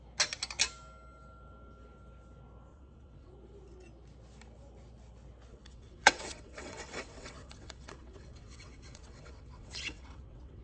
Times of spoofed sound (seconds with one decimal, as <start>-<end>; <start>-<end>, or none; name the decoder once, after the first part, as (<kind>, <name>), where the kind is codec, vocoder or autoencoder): 2.7-3.3 (vocoder, WaveNeXt); 5.5-10.6